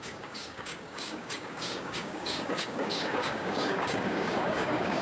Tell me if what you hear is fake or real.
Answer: fake